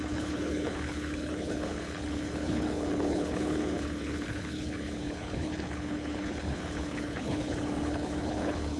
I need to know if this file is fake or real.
fake